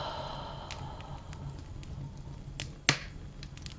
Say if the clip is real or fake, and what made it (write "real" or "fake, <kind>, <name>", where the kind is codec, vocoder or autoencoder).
real